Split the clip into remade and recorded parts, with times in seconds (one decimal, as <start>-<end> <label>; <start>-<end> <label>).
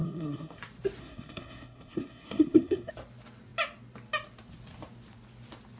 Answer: 0.0-0.6 remade; 0.6-1.0 recorded; 1.0-2.9 remade; 2.9-5.8 recorded